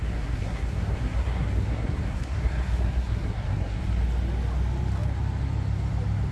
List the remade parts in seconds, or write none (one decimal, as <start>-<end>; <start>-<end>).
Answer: 0.0-3.8